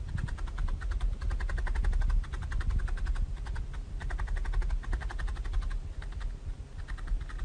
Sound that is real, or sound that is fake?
real